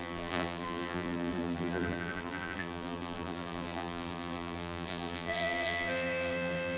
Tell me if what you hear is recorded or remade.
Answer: remade